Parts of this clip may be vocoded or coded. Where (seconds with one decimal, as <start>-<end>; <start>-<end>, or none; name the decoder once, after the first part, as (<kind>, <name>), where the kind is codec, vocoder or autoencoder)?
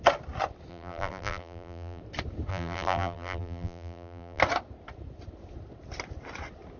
0.7-2.0 (vocoder, BigVGAN v2); 2.5-4.4